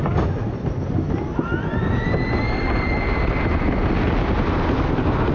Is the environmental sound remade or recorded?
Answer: recorded